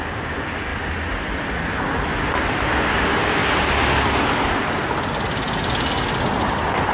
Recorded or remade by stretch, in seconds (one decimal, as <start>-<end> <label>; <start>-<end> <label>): 0.0-6.9 recorded